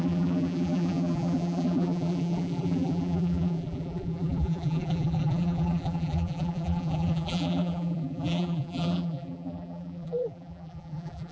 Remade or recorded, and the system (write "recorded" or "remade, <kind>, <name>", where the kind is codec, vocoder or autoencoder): remade, vocoder, BigVGAN v2